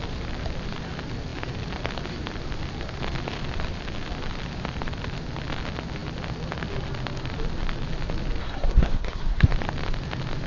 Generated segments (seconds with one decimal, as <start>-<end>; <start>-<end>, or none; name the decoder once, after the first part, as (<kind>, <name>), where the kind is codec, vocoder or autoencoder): 8.4-9.5 (codec, SNAC)